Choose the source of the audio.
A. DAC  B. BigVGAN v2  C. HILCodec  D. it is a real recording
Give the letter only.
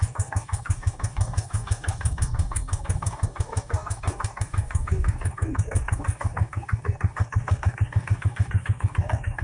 A